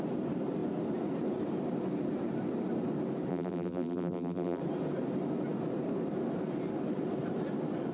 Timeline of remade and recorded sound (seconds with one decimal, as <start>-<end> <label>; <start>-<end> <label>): 0.0-3.3 recorded; 3.3-4.6 remade; 4.6-7.9 recorded